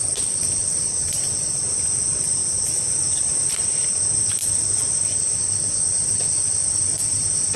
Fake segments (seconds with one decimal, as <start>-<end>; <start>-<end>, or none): 0.6-1.6; 2.4-4.0; 4.4-5.4